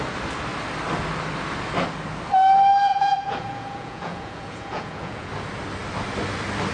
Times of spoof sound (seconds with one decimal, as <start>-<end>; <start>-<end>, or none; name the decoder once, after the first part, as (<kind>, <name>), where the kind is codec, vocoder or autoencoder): 2.9-5.3 (vocoder, Vocos)